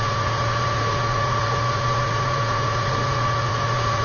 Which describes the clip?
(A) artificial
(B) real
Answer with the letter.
A